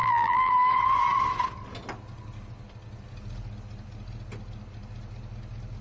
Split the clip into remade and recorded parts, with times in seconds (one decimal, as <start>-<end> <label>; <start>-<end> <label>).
0.0-0.5 remade; 0.5-5.8 recorded